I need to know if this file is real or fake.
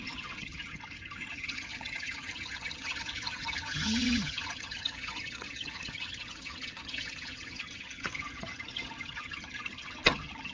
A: fake